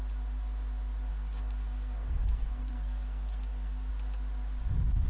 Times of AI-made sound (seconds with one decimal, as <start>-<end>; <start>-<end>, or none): 1.1-3.9